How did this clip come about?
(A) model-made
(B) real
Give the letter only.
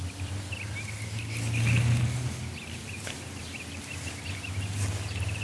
B